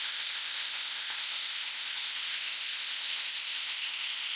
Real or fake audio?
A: fake